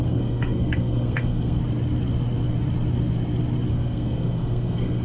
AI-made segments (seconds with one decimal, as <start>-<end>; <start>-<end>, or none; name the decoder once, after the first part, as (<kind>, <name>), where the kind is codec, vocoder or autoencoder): 0.0-1.6 (codec, SNAC); 3.7-5.0